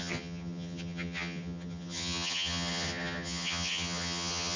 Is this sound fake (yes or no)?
yes